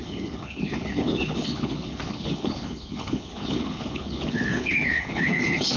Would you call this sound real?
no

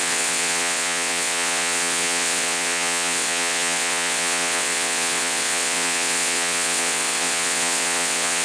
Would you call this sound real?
no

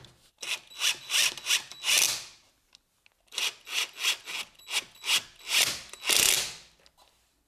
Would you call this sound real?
yes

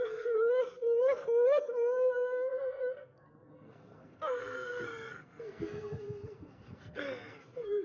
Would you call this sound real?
no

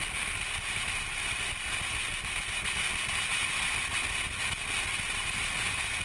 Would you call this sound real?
yes